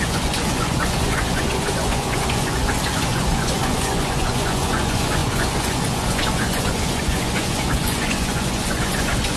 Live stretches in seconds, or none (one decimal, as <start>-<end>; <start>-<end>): none